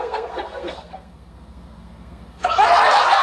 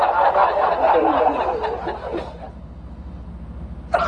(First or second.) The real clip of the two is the second